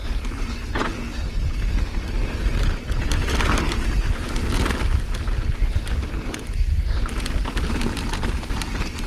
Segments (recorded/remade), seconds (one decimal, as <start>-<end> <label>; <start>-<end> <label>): 0.0-9.1 recorded